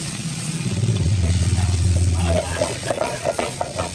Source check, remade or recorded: remade